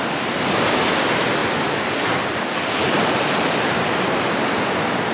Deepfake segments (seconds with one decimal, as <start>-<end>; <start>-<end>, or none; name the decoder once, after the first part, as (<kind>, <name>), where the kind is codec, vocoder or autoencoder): none